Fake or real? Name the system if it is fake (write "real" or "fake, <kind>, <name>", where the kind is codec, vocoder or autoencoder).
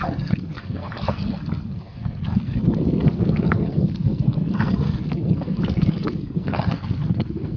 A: fake, codec, SNAC